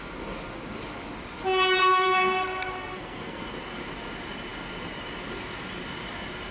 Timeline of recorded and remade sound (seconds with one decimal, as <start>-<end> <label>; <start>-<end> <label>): 0.0-1.8 recorded; 1.8-3.4 remade; 3.4-6.5 recorded